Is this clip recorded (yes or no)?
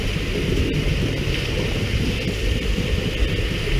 yes